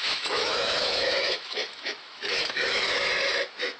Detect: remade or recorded remade